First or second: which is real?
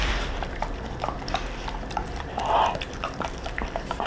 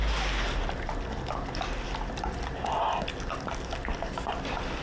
second